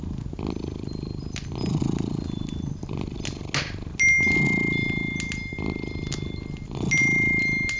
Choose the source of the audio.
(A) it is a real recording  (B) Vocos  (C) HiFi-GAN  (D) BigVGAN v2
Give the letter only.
A